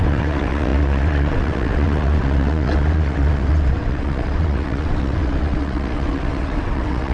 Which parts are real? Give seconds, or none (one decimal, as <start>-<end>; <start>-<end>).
none